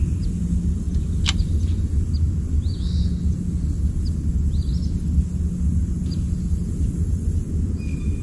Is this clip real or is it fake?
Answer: real